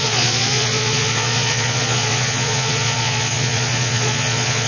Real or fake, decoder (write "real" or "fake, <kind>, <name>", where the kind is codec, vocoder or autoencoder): fake, vocoder, Vocos